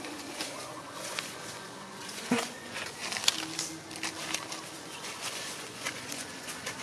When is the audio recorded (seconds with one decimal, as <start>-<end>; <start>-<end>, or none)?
3.0-4.8